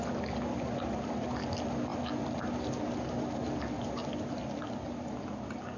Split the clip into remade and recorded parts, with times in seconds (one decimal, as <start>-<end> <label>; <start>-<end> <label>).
0.0-5.8 recorded